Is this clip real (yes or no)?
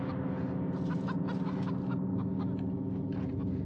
yes